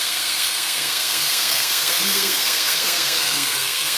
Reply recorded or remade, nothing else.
remade